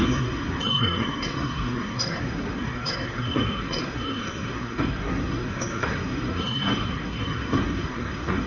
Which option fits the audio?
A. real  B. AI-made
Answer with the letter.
B